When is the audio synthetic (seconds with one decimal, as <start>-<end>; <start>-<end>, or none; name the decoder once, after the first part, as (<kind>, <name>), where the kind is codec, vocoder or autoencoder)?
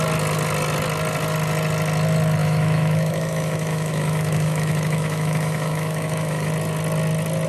2.4-6.5 (autoencoder, DAC-VAE)